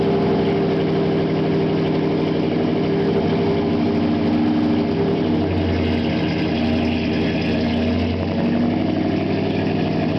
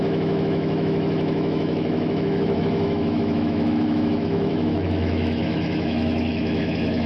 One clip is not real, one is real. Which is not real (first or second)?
second